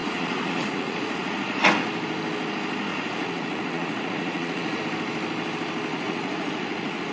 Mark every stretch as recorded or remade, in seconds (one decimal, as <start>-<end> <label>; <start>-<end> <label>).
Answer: 0.0-1.7 remade; 1.7-2.9 recorded; 2.9-4.8 remade; 4.8-5.9 recorded; 5.9-7.1 remade